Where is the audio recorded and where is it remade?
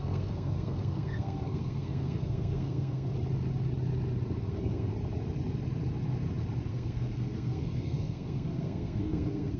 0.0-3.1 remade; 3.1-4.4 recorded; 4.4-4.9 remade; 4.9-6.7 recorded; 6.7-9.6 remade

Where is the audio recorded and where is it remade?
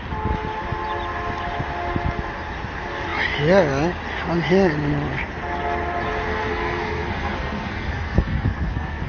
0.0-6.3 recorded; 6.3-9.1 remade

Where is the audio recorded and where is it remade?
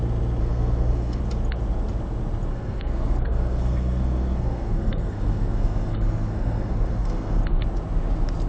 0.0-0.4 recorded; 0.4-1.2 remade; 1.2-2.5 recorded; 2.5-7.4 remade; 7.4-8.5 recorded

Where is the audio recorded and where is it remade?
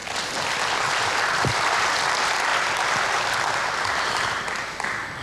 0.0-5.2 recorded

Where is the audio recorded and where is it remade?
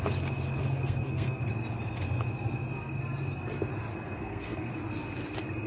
0.0-0.6 recorded; 0.6-1.4 remade; 1.4-3.9 recorded; 3.9-4.7 remade; 4.7-5.7 recorded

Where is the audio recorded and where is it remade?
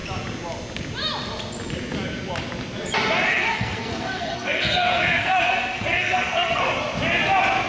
0.0-3.3 recorded; 3.3-6.6 remade; 6.6-7.7 recorded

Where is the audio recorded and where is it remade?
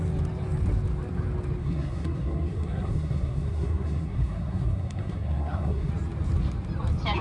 0.0-1.6 recorded; 1.6-5.9 remade; 5.9-7.2 recorded